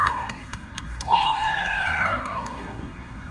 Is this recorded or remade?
remade